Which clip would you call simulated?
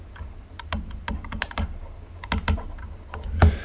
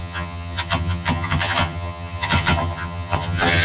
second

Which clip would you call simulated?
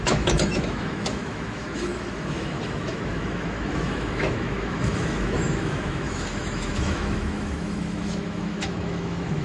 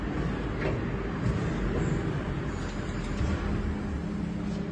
first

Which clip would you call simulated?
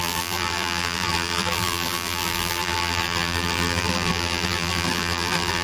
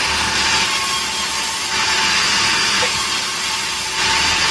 first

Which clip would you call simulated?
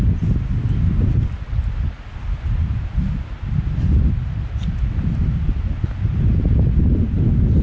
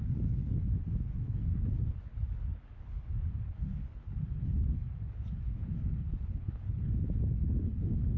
second